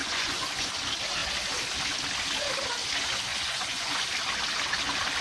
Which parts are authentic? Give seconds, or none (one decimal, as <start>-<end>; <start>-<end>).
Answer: 0.7-3.3; 4.0-5.2